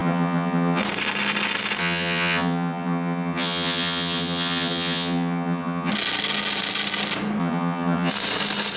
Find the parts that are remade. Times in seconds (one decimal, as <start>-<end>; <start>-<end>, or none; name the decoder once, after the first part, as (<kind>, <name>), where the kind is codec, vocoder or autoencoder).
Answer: 0.0-0.8 (vocoder, HiFi-GAN); 1.8-5.9; 7.4-8.1